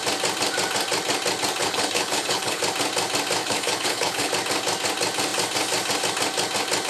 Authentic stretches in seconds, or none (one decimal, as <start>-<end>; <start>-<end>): 0.0-1.6; 2.6-3.4; 4.3-6.9